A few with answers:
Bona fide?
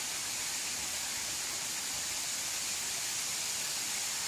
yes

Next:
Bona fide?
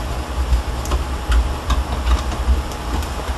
yes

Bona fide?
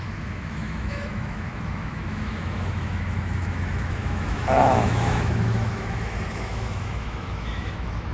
no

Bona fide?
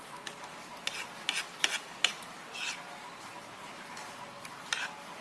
yes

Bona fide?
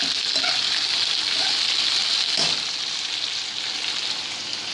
yes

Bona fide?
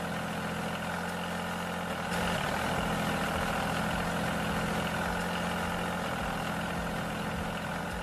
yes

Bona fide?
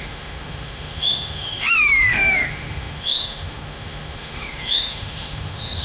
no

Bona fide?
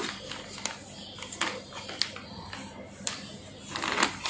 yes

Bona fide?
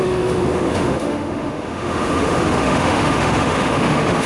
no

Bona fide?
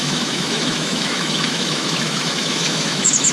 no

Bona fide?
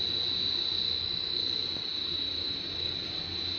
yes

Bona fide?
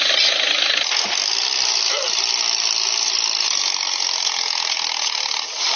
yes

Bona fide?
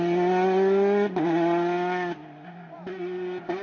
yes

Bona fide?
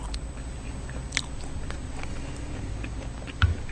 yes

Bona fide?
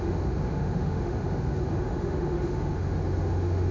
no